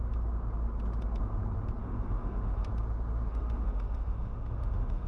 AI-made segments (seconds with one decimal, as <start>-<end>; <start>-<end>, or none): 1.8-2.7; 3.3-5.1